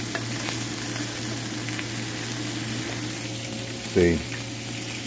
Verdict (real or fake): real